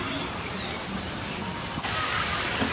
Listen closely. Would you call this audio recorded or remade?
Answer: recorded